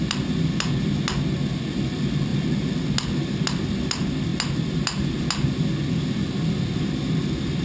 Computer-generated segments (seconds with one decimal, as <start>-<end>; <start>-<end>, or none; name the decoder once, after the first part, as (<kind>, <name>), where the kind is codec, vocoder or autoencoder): none